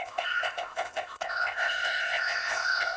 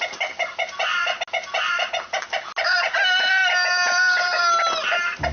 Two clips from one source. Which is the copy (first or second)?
first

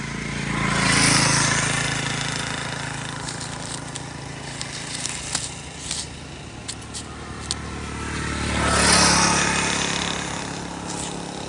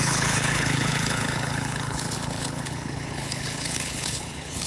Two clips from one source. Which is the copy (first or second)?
second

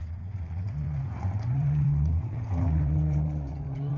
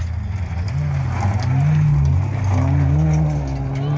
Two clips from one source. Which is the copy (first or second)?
first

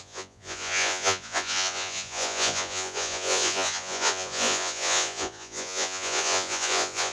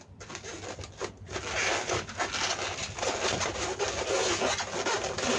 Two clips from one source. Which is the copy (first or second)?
first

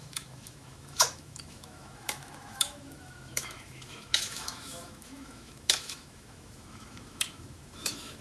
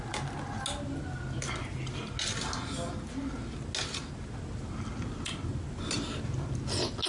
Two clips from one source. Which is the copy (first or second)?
first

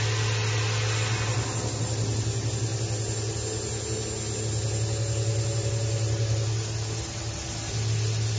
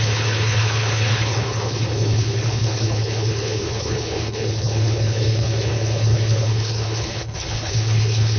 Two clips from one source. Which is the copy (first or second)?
second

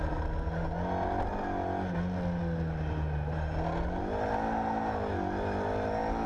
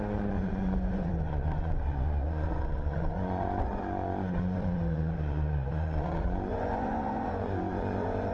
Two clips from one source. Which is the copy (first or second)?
second